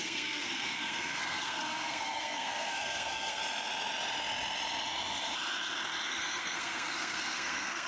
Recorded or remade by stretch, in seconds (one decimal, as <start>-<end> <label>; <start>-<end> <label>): 0.0-3.4 remade; 3.4-6.1 recorded; 6.1-7.9 remade